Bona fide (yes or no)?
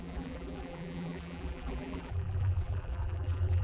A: no